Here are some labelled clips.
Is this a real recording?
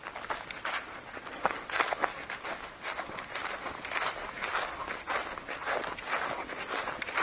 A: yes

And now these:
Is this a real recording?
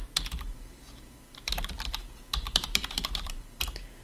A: no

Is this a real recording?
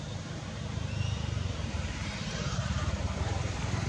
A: no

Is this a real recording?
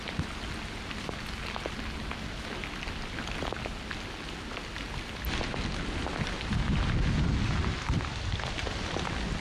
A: yes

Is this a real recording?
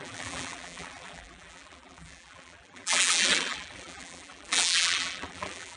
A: no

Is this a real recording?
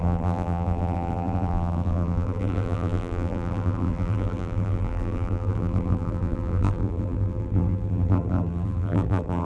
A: no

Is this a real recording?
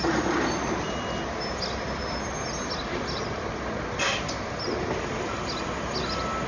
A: yes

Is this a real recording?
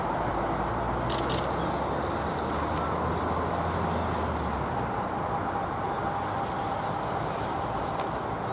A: yes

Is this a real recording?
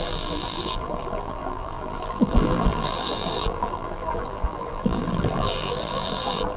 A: no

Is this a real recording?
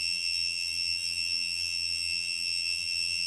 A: no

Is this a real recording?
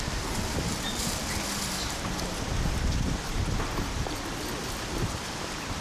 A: yes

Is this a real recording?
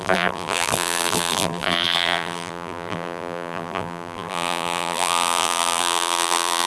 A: no